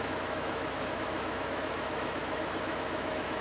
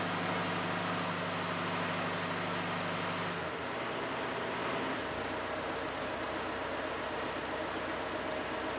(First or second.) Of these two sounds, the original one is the second